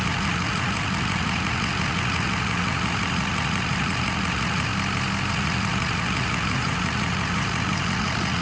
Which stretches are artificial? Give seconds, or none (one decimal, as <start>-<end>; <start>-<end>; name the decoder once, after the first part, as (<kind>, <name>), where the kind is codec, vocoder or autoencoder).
0.0-4.7 (vocoder, Vocos); 5.3-8.4